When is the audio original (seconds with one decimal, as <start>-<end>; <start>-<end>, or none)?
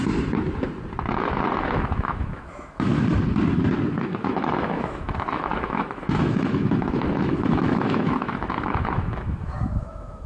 0.0-1.6; 2.9-4.0